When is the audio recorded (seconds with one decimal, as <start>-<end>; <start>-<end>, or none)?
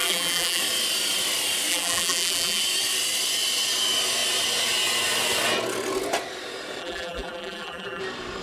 0.6-1.7; 2.6-6.8; 8.0-8.4